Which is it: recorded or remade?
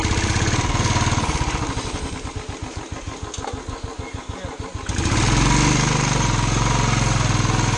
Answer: recorded